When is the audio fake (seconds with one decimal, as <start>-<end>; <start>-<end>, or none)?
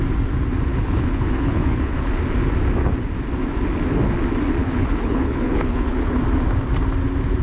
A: 0.7-2.2; 4.6-6.2